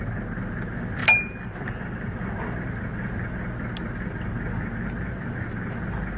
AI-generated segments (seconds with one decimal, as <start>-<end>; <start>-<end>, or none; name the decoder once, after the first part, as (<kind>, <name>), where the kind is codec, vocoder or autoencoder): none